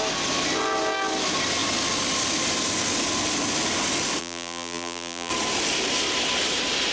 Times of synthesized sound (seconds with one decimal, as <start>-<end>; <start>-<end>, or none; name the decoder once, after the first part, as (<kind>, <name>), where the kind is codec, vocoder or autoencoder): 4.2-5.3 (vocoder, BigVGAN v2)